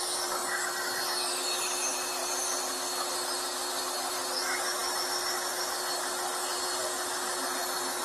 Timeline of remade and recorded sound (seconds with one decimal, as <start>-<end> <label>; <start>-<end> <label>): 0.0-8.0 recorded